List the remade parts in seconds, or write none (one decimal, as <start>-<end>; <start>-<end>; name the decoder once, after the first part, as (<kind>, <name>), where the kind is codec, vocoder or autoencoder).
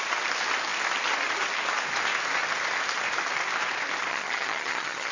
4.1-5.1 (vocoder, HiFi-GAN)